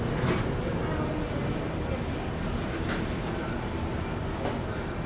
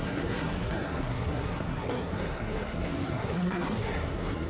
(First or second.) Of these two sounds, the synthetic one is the second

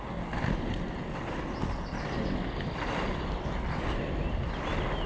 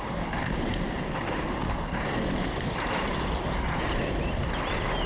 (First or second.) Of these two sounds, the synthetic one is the second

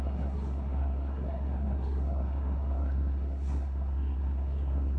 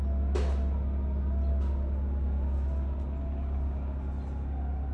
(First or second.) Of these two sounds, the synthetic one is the first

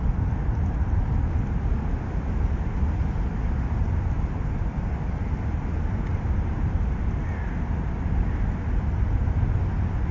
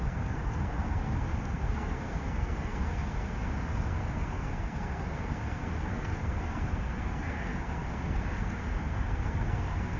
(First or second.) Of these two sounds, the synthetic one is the second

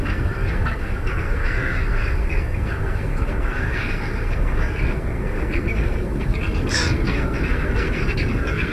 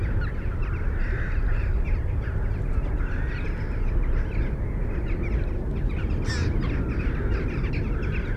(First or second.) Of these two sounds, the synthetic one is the first